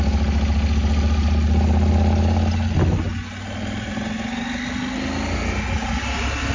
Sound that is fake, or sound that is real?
real